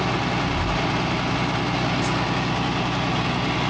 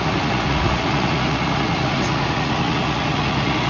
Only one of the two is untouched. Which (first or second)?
first